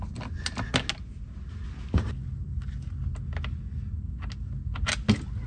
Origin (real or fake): real